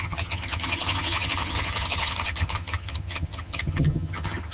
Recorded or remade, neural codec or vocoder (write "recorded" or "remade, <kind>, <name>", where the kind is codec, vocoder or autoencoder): remade, vocoder, HiFi-GAN